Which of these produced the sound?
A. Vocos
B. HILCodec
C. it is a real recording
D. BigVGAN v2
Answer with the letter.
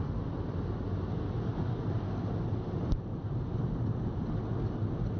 C